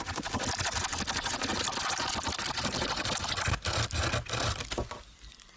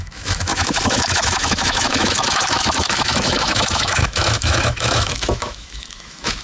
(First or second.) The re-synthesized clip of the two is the second